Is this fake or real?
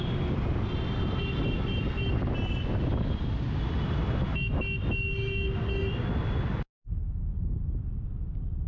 real